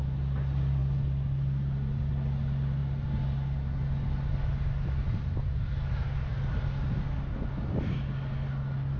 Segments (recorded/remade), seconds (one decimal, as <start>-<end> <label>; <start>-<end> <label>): 0.0-9.0 recorded